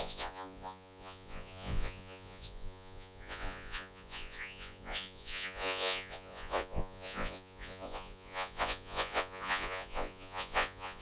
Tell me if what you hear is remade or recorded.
remade